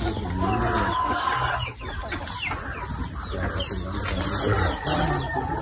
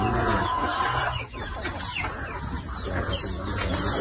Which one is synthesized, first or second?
second